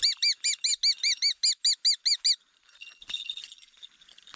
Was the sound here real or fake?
real